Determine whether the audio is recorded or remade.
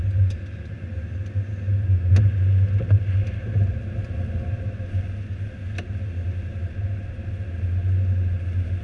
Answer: recorded